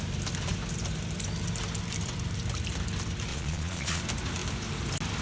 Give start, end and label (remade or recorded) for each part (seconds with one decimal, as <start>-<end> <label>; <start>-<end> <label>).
0.0-3.3 recorded; 3.3-4.0 remade; 4.0-5.2 recorded

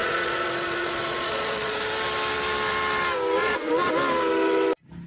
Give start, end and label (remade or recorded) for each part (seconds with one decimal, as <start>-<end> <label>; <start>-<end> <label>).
0.0-1.8 remade; 1.8-3.4 recorded; 3.4-3.9 remade; 3.9-5.1 recorded

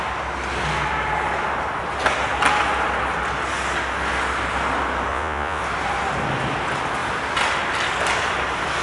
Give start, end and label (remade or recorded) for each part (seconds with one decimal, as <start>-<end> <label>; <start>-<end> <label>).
0.0-5.1 recorded; 5.1-5.6 remade; 5.6-8.8 recorded

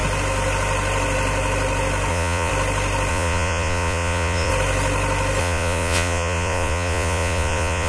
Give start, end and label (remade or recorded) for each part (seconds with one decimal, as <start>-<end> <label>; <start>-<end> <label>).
0.0-2.1 recorded; 2.1-2.5 remade; 2.5-3.1 recorded; 3.1-4.5 remade; 4.5-5.4 recorded; 5.4-7.9 remade

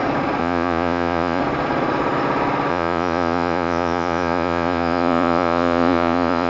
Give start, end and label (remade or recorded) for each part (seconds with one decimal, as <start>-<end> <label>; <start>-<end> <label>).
0.0-0.4 recorded; 0.4-1.4 remade; 1.4-2.7 recorded; 2.7-6.5 remade

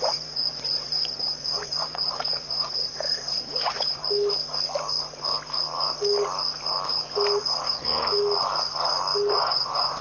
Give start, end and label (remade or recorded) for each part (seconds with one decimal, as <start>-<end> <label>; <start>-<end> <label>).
0.0-4.0 remade; 4.0-7.4 recorded; 7.4-7.9 remade; 7.9-9.3 recorded; 9.3-10.0 remade

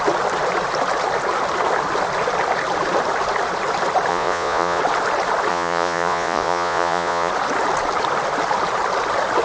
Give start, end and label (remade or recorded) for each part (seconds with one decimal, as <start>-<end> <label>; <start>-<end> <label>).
0.0-4.1 recorded; 4.1-4.8 remade; 4.8-5.5 recorded; 5.5-7.3 remade; 7.3-9.4 recorded

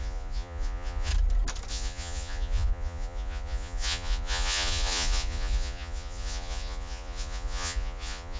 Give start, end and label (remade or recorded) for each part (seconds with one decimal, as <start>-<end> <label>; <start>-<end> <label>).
0.0-1.1 remade; 1.1-1.7 recorded; 1.7-8.4 remade